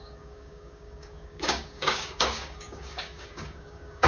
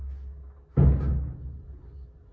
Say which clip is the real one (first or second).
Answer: second